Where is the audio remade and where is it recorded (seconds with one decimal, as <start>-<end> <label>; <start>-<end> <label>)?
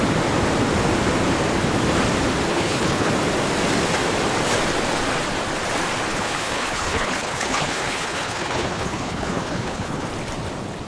0.0-2.5 recorded; 2.5-3.1 remade; 3.1-6.1 recorded; 6.1-10.1 remade; 10.1-10.9 recorded